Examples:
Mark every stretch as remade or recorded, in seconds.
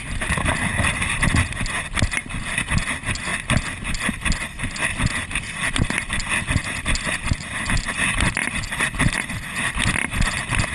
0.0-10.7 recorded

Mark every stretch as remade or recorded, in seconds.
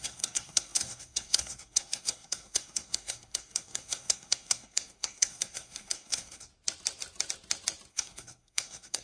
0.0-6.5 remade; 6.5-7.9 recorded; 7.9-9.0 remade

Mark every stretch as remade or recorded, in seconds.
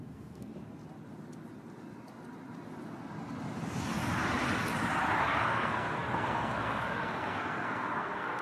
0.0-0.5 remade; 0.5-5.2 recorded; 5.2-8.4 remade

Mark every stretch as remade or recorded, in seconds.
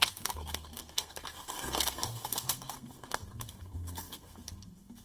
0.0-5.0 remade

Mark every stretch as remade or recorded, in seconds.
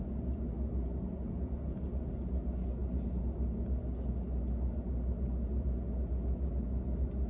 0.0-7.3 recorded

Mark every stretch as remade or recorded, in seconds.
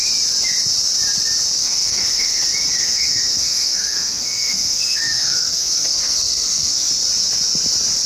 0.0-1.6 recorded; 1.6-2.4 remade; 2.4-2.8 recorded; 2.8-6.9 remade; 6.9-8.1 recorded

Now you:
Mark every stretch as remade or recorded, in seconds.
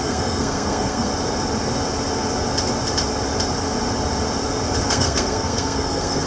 0.0-1.1 remade; 1.1-4.9 recorded; 4.9-6.3 remade